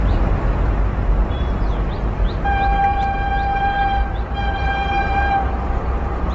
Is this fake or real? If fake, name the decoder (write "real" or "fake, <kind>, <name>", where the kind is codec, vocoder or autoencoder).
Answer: fake, vocoder, BigVGAN v2